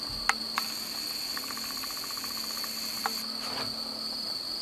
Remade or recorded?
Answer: recorded